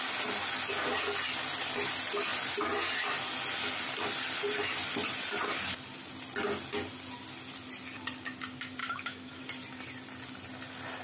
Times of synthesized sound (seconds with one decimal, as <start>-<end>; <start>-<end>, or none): 8.8-9.4